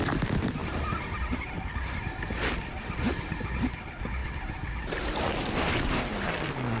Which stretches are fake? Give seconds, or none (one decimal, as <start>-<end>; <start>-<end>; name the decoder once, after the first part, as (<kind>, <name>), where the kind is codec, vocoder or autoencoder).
0.6-2.1 (vocoder, BigVGAN v2)